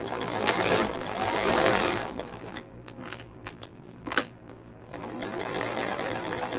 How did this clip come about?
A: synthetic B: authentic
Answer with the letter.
A